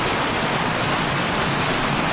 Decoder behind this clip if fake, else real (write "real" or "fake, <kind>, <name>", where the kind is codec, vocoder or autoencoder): real